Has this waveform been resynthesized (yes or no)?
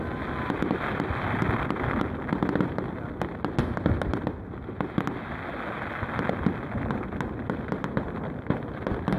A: no